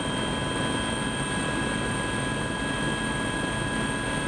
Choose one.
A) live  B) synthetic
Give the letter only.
A